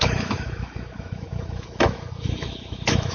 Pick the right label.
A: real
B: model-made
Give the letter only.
B